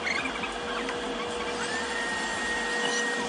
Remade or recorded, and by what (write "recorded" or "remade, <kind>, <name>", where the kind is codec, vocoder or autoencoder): recorded